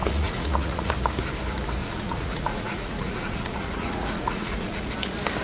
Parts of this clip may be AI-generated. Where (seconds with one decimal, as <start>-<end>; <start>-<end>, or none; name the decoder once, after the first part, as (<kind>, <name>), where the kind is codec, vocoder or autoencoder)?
0.0-0.9 (vocoder, Vocos); 1.8-4.9